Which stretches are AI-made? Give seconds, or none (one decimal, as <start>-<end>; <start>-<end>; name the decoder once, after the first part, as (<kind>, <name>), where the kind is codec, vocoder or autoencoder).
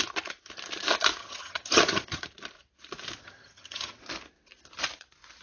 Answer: 1.2-2.2 (vocoder, HiFi-GAN); 3.2-4.0